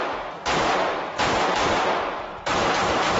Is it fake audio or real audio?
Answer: fake